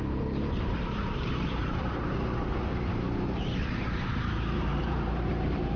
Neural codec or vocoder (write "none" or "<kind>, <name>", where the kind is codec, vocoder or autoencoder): vocoder, BigVGAN v2